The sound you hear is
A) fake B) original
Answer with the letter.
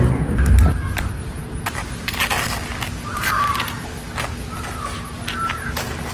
B